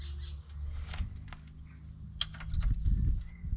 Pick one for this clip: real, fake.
real